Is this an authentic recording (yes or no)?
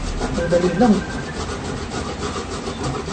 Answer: yes